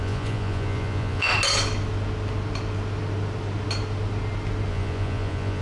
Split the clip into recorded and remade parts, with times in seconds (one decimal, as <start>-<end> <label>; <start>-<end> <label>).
0.0-1.3 remade; 1.3-4.7 recorded; 4.7-5.6 remade